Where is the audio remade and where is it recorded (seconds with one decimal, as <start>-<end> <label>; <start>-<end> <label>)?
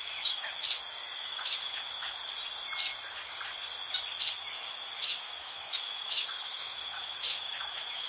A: 0.0-0.6 remade; 0.6-1.2 recorded; 1.2-2.2 remade; 2.2-5.0 recorded; 5.0-8.1 remade